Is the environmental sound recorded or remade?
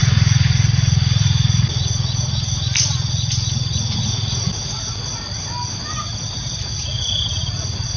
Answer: recorded